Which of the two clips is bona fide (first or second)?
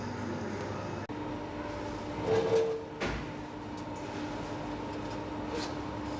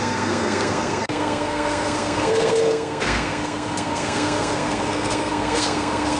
first